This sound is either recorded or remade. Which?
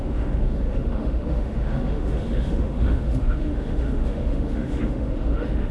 remade